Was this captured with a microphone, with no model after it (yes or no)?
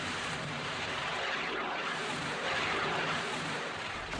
no